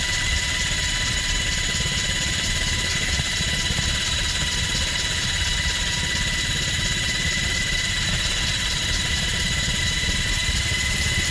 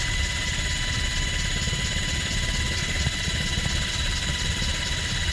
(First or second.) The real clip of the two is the second